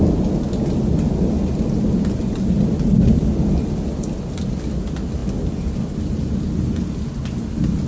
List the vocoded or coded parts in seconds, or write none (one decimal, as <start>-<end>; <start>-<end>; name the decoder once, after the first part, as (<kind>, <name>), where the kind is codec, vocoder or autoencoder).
none